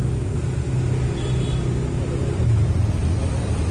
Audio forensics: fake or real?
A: real